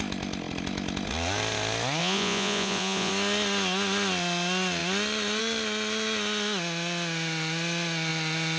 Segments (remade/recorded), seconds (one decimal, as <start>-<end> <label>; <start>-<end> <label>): 0.0-2.0 recorded; 2.0-3.1 remade; 3.1-8.6 recorded